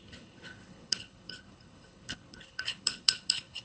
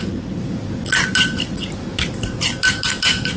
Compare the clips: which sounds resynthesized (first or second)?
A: first